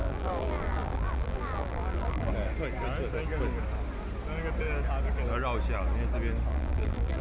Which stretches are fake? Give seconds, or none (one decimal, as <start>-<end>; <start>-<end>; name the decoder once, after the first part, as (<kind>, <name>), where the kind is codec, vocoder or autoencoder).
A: 0.0-2.3 (vocoder, BigVGAN v2); 6.5-7.2